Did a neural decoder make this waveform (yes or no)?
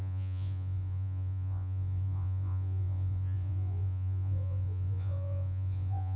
yes